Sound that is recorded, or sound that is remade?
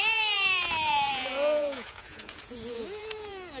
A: remade